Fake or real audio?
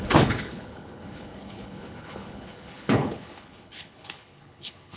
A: fake